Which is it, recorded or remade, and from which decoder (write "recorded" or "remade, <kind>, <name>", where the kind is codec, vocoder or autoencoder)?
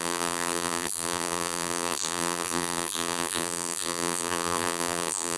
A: remade, vocoder, BigVGAN v2